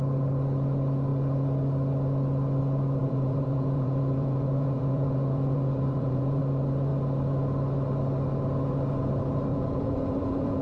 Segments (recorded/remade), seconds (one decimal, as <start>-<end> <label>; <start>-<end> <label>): 0.0-3.0 recorded; 3.0-6.4 remade; 6.4-9.5 recorded; 9.5-10.6 remade